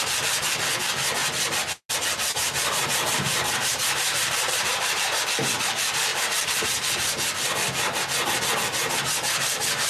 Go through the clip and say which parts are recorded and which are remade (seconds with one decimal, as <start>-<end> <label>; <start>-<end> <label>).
0.0-2.4 recorded; 2.4-5.2 remade; 5.2-9.9 recorded